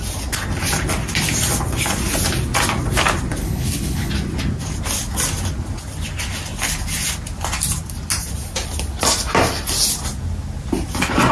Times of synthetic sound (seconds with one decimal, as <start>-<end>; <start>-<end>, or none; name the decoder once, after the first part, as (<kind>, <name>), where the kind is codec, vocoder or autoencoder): 3.4-4.1 (codec, HILCodec)